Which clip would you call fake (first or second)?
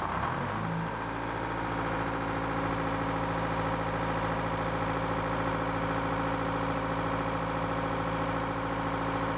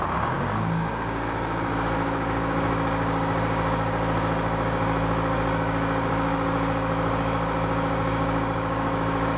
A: second